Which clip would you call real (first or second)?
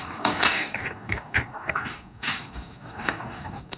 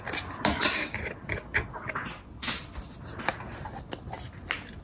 second